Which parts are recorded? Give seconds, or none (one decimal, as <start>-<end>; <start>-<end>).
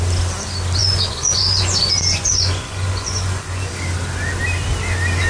0.0-0.8; 3.7-5.3